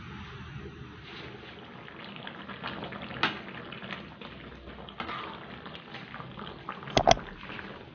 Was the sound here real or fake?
real